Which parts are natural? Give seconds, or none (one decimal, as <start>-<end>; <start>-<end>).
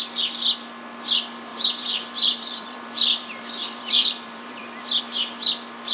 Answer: 0.0-1.5; 5.0-5.9